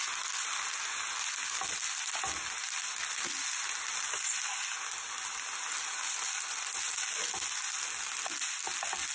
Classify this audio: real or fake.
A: real